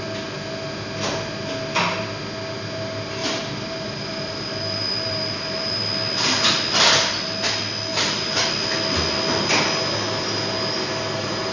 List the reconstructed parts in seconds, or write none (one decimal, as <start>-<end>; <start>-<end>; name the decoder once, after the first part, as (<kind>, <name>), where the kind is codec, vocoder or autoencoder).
3.2-5.8 (vocoder, BigVGAN v2); 7.9-8.5